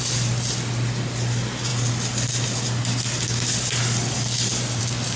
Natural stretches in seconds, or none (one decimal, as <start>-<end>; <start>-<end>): 0.0-5.2